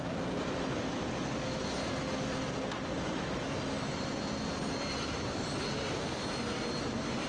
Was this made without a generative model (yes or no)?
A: yes